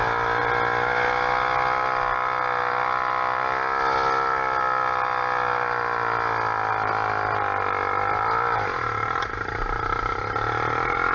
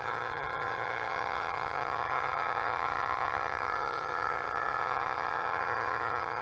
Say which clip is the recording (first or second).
first